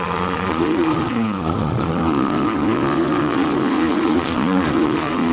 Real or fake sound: fake